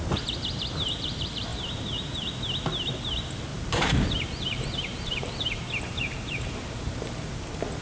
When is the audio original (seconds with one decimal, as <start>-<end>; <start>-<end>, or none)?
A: 0.0-1.5; 2.3-3.5; 7.0-7.8